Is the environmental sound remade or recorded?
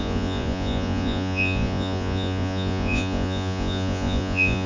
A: remade